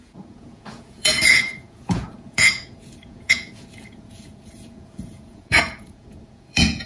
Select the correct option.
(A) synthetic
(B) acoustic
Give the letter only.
A